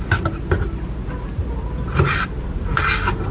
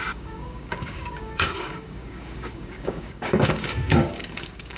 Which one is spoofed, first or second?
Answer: second